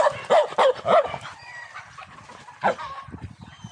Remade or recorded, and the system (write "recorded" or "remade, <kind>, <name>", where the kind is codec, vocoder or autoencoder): remade, vocoder, BigVGAN v2